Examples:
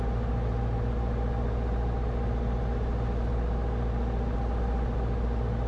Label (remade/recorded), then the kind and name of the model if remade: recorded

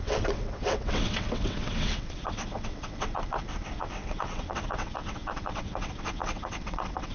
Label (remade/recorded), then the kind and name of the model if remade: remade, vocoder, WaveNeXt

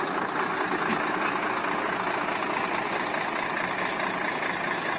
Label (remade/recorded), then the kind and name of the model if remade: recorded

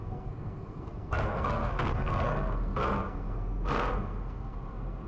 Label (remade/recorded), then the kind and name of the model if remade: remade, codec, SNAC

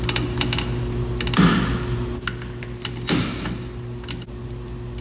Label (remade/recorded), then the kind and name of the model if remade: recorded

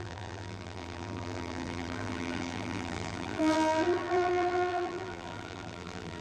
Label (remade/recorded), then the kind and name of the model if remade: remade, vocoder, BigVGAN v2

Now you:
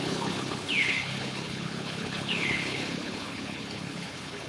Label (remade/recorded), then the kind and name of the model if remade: remade, codec, HILCodec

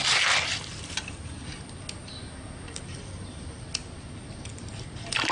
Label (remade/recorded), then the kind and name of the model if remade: recorded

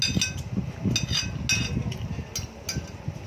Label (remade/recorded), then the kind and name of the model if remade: recorded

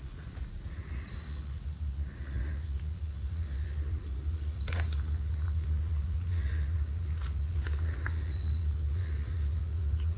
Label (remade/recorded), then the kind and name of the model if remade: remade, vocoder, Vocos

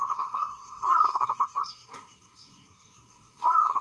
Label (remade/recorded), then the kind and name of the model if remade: remade, codec, SNAC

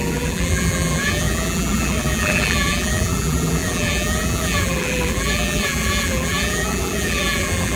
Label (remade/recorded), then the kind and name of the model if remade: remade, vocoder, BigVGAN v2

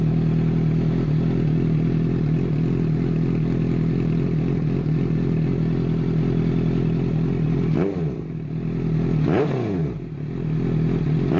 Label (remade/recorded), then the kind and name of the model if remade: recorded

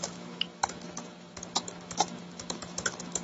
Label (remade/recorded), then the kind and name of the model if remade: remade, autoencoder, DAC-VAE